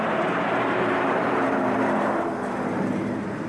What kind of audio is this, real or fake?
fake